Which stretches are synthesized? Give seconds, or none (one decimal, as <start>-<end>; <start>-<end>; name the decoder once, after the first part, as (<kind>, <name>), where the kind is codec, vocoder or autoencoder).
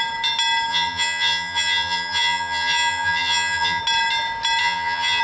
0.7-3.8 (vocoder, HiFi-GAN); 4.6-5.2